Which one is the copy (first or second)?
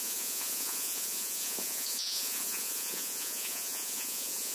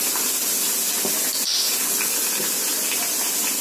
first